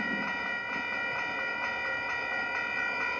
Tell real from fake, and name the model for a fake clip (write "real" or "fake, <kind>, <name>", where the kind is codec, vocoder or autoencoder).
real